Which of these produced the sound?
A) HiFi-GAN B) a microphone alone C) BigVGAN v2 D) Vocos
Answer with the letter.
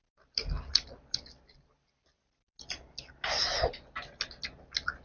B